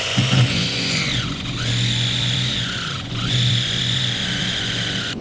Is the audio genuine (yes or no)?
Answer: no